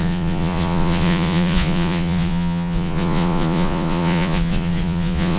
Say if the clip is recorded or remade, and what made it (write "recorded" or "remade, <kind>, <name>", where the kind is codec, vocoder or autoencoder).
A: remade, vocoder, Vocos